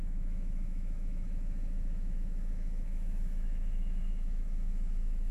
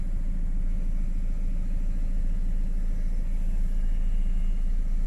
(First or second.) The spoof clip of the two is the first